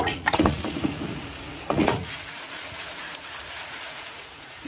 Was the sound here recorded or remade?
remade